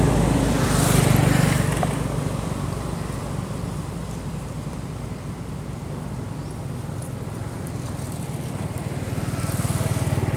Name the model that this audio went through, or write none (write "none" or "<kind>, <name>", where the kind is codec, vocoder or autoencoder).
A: none